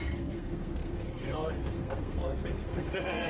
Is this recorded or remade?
remade